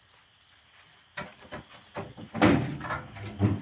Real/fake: real